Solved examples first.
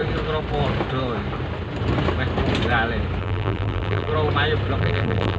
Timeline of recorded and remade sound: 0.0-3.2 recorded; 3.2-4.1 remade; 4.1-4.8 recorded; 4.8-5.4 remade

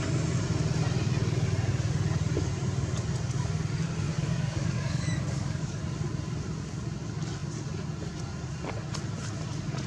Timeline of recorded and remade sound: 0.0-4.2 recorded; 4.2-5.8 remade; 5.8-9.9 recorded

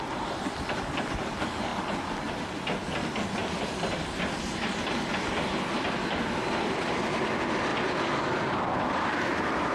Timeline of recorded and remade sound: 0.0-9.7 recorded

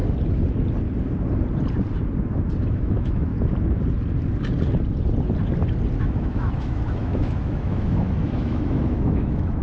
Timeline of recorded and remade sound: 0.0-2.6 recorded; 2.6-3.3 remade; 3.3-6.0 recorded; 6.0-9.6 remade

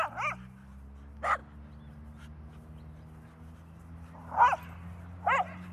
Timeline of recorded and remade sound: 0.0-5.7 recorded

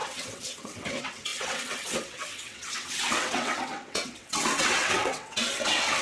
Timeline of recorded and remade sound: 0.0-6.0 remade

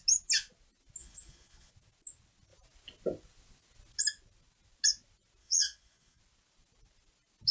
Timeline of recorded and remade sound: 0.0-1.0 recorded; 1.0-1.7 remade; 1.7-5.4 recorded; 5.4-6.2 remade; 6.2-7.5 recorded

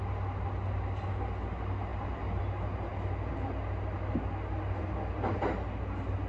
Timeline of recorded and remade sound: 0.0-6.3 recorded